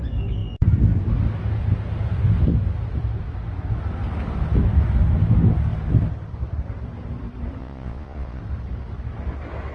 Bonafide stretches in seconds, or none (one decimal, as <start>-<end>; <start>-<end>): 0.0-7.6; 8.4-9.7